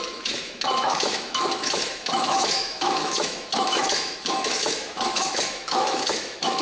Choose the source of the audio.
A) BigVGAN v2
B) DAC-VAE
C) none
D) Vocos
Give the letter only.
B